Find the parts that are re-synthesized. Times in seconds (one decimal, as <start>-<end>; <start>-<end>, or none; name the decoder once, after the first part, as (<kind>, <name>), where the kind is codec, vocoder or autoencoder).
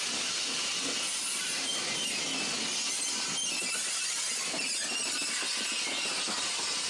none